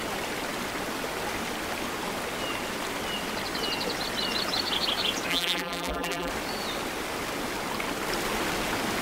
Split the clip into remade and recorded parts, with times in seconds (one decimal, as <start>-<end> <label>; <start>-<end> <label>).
0.0-5.3 recorded; 5.3-6.3 remade; 6.3-9.0 recorded

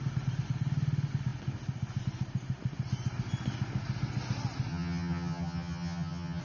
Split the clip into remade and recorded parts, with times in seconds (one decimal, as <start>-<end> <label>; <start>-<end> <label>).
0.0-4.7 recorded; 4.7-6.4 remade

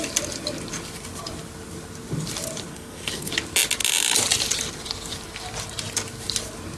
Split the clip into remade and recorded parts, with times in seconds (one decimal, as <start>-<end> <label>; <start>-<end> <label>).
0.0-2.7 recorded; 2.7-3.3 remade; 3.3-6.8 recorded